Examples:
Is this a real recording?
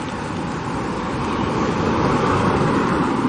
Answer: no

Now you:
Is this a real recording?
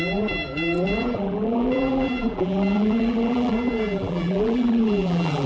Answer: no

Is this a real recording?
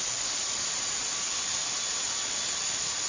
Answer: yes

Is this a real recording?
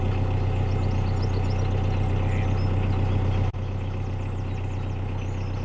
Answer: yes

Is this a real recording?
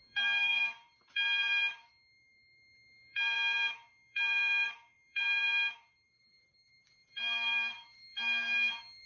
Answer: no